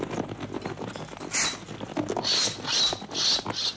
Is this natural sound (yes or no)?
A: yes